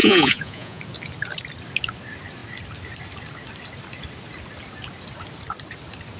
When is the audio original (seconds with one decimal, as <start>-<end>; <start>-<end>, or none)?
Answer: 0.8-6.2